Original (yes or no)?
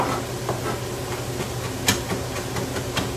yes